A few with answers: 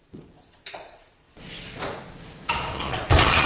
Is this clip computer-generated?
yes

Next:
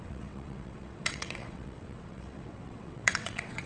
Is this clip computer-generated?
yes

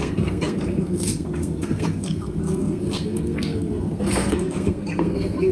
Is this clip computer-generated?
yes